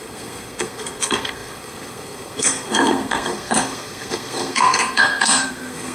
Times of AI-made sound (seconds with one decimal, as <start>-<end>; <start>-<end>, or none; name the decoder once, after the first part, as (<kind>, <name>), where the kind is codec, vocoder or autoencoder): 0.0-5.9 (codec, SNAC)